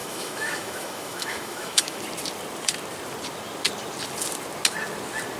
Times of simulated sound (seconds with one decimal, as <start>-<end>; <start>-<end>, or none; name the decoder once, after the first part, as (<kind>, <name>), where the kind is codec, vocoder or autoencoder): 0.0-2.0 (autoencoder, DAC-VAE)